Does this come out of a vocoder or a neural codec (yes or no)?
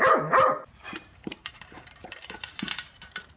yes